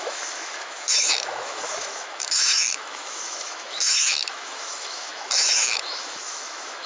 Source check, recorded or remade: remade